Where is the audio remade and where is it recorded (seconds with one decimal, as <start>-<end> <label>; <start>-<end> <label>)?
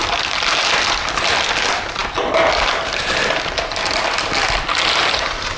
0.0-5.6 recorded